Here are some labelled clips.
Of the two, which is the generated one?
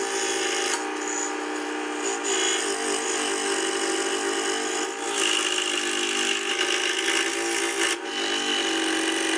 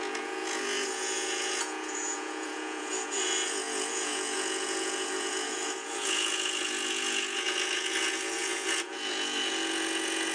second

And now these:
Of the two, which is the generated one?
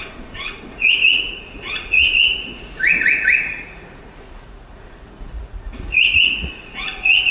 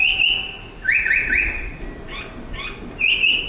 first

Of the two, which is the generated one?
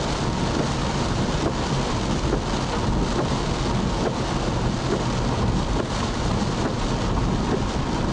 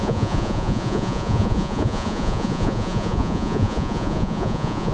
second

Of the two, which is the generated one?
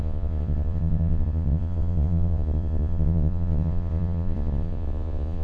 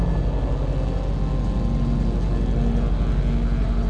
first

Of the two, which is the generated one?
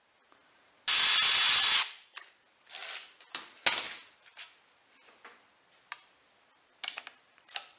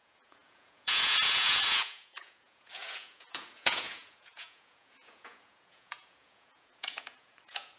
second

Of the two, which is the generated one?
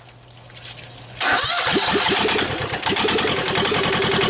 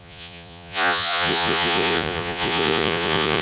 second